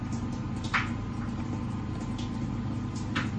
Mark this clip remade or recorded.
recorded